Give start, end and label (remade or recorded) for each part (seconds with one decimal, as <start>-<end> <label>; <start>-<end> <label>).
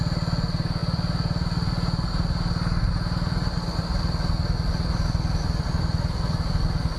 0.0-7.0 recorded